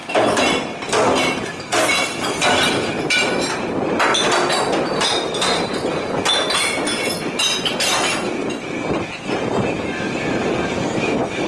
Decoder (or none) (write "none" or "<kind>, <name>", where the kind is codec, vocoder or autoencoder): none